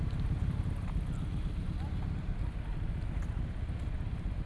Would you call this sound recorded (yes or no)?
yes